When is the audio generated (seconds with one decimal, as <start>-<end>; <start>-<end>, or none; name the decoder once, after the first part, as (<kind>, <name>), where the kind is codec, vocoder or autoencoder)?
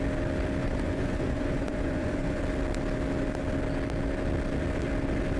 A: 0.6-2.4 (vocoder, Vocos)